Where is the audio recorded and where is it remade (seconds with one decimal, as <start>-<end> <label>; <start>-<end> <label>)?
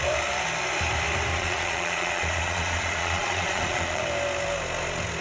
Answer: 0.0-1.3 recorded; 1.3-4.0 remade; 4.0-5.2 recorded